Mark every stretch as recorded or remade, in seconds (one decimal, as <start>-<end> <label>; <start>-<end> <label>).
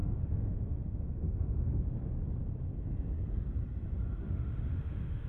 0.0-1.8 remade; 1.8-4.2 recorded; 4.2-5.3 remade